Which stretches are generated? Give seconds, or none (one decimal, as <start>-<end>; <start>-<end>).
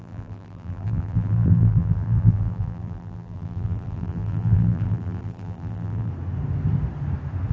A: 0.0-6.1